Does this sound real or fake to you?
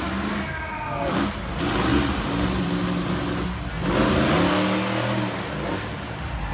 real